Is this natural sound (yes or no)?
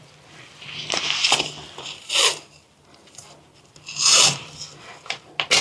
yes